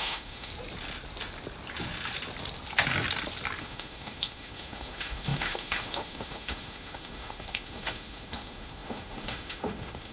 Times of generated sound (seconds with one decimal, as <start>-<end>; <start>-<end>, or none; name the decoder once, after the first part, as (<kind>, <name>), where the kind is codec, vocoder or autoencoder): 0.0-0.5 (autoencoder, DAC-VAE); 3.6-10.1